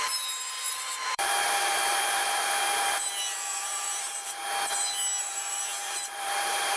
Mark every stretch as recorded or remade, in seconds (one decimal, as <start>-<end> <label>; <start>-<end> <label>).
0.0-4.4 remade; 4.4-5.2 recorded; 5.2-6.8 remade